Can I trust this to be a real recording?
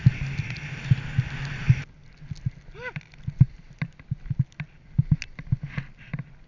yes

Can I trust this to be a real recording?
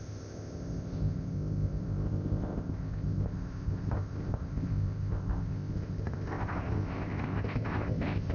no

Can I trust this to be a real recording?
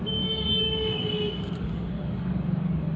no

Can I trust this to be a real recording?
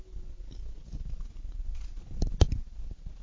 yes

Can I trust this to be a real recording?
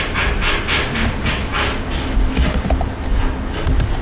yes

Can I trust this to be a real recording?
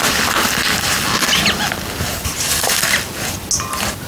yes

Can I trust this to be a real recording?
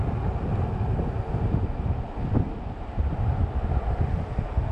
yes